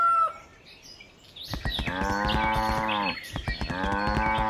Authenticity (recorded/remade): recorded